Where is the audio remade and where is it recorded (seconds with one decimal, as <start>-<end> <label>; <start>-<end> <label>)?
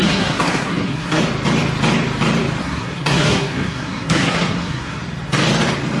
0.0-1.2 remade; 1.2-2.6 recorded; 2.6-5.0 remade; 5.0-6.0 recorded